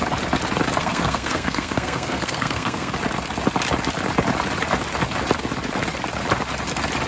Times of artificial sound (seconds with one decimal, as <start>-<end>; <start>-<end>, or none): 0.8-2.9